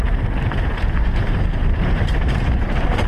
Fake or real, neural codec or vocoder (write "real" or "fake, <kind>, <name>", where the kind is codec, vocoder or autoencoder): fake, vocoder, BigVGAN v2